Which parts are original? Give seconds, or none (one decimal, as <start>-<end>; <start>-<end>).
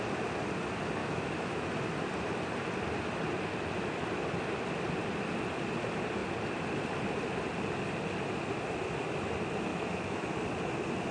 0.0-1.0; 1.7-9.7; 10.3-11.1